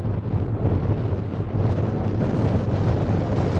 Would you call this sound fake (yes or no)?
no